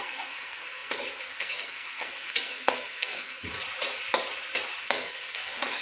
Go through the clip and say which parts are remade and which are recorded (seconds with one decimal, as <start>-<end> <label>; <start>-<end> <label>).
0.0-3.5 remade; 3.5-4.8 recorded; 4.8-5.8 remade